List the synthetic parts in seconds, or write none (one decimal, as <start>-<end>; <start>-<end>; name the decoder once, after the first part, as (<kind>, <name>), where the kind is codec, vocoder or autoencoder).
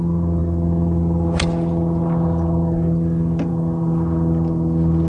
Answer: none